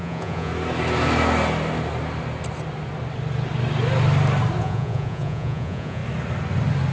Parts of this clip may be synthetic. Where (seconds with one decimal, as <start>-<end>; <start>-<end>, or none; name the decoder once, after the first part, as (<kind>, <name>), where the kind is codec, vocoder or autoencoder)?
0.0-0.5 (vocoder, Vocos); 4.6-6.0